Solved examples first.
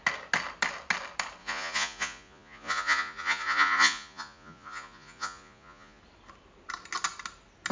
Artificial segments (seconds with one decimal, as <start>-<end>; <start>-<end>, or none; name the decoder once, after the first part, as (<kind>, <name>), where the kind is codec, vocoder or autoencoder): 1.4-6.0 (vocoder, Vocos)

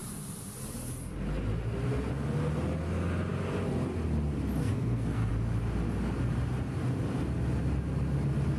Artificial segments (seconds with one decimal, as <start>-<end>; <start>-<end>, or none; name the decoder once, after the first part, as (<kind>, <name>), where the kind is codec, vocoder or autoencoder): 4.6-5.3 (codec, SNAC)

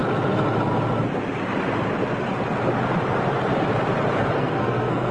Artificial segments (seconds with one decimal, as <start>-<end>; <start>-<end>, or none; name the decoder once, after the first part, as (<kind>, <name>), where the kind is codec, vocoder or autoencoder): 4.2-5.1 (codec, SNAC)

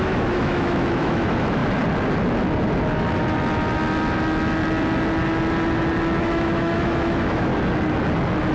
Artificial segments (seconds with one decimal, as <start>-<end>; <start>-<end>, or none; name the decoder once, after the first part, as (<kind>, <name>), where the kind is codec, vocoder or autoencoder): 0.0-1.6 (autoencoder, DAC-VAE); 6.2-7.5

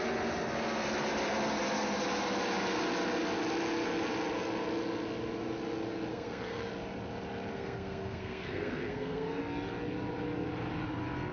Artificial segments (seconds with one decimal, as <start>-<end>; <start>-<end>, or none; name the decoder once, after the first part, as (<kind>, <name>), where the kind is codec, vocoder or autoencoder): 6.1-6.7 (codec, SNAC); 7.5-9.4